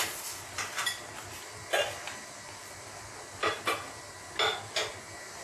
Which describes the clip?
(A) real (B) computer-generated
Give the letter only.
A